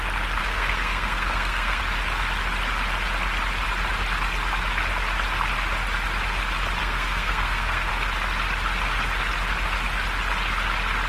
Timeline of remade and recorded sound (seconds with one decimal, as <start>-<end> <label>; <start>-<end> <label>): 0.0-0.4 recorded; 0.4-1.8 remade; 1.8-6.8 recorded; 6.8-7.9 remade; 7.9-11.1 recorded